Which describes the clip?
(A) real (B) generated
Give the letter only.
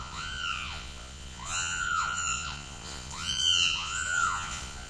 B